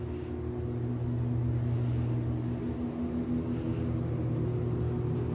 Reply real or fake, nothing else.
real